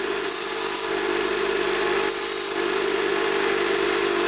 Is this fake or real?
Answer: real